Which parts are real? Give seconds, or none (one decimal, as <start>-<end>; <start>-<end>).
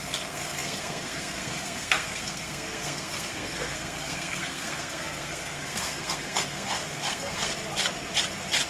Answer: 7.5-8.7